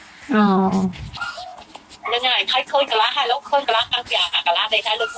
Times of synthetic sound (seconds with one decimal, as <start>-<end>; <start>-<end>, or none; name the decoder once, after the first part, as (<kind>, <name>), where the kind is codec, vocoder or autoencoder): none